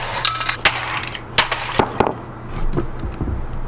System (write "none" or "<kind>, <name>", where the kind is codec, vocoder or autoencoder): none